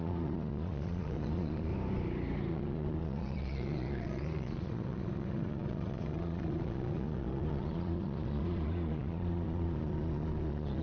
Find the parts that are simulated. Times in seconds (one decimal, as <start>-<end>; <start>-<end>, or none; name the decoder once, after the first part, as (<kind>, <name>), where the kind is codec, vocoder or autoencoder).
0.0-1.7 (vocoder, Vocos); 2.5-10.8

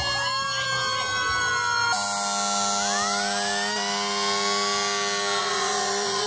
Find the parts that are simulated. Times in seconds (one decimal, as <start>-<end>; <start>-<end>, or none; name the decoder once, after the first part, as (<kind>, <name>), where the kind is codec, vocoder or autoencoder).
5.4-6.3 (vocoder, Vocos)

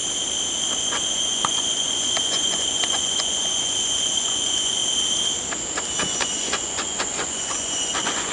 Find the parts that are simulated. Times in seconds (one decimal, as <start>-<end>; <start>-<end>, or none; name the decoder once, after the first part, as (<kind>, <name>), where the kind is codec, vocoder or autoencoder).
0.8-4.8 (vocoder, Vocos); 6.1-8.3

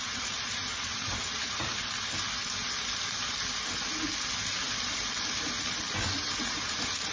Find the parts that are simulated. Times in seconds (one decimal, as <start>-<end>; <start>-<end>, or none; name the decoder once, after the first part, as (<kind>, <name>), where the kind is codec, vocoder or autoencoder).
0.0-1.7 (vocoder, Vocos); 6.0-7.1

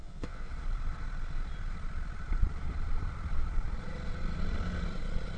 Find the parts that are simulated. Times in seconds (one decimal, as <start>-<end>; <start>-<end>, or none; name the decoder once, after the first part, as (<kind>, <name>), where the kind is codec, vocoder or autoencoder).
0.0-0.5 (vocoder, Vocos)

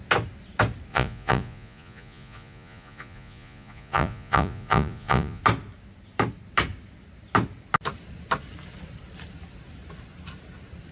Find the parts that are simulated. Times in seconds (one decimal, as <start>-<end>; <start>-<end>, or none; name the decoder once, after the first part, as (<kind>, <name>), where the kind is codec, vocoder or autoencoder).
0.9-5.4 (vocoder, Vocos)